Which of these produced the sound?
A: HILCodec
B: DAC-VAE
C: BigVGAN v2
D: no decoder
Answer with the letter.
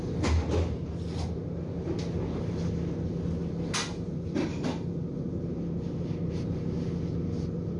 D